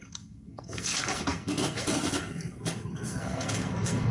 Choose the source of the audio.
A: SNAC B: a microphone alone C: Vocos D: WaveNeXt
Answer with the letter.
A